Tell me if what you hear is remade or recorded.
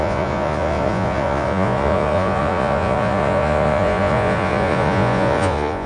remade